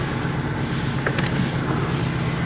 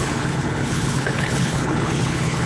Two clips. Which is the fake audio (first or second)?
second